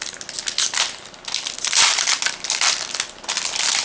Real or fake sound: real